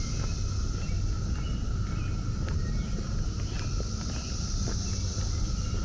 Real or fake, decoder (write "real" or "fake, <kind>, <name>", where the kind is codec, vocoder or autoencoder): real